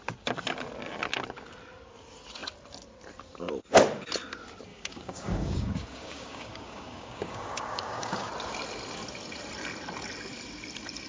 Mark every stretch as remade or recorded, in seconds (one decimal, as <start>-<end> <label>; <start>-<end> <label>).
0.0-4.7 recorded; 4.7-8.3 remade; 8.3-11.1 recorded